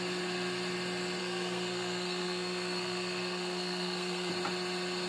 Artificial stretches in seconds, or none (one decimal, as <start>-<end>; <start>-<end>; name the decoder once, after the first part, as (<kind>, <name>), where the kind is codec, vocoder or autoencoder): 1.2-4.3 (codec, SNAC)